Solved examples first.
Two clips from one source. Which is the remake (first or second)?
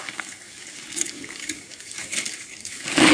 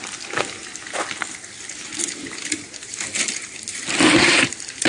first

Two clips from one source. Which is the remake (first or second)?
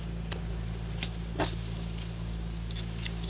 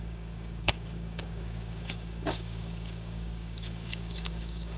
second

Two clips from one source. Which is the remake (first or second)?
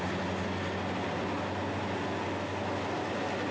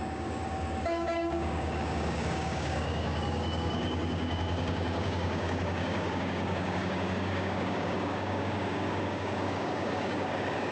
second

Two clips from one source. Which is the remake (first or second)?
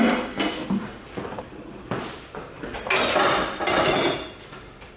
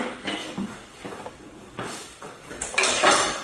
second